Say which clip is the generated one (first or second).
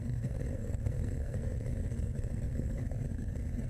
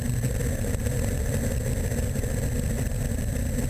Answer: first